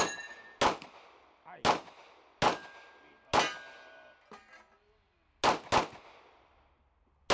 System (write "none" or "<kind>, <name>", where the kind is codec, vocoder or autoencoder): none